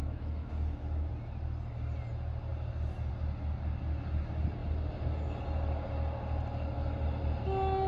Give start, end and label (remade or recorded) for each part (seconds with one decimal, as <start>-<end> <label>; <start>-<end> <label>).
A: 0.0-1.1 remade; 1.1-7.9 recorded